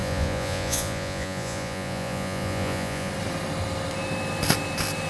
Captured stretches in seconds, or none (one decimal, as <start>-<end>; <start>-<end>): 3.1-5.1